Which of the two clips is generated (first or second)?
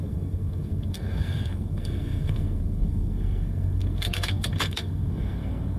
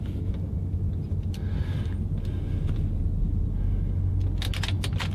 first